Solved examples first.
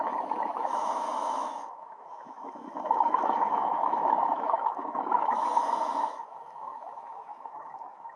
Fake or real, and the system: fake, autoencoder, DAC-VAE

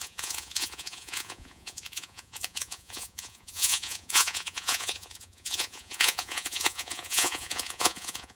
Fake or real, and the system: fake, vocoder, Vocos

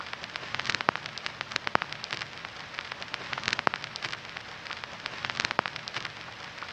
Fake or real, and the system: fake, vocoder, BigVGAN v2